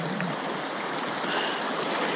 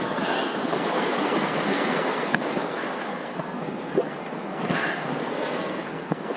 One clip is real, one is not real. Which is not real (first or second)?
second